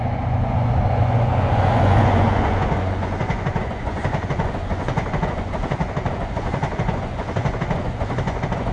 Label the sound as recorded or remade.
remade